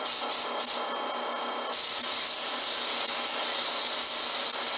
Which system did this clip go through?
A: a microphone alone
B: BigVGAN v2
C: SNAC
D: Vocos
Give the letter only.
A